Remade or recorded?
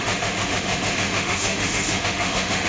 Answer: remade